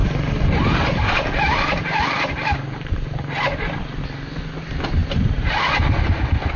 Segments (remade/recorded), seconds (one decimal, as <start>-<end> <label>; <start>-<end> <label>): 0.0-4.0 remade; 4.0-6.6 recorded